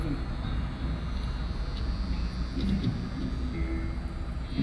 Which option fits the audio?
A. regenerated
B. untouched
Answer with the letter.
B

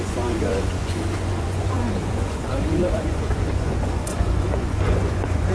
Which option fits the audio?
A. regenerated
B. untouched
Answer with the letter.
A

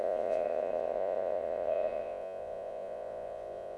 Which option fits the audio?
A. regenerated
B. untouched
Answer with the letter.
A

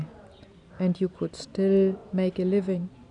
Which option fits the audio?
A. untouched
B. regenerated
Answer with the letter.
A